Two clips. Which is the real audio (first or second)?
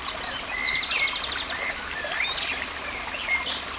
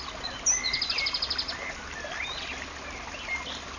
second